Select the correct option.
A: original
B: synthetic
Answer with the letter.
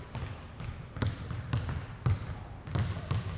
A